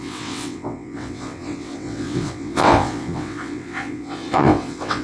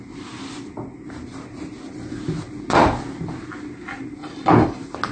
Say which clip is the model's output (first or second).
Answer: first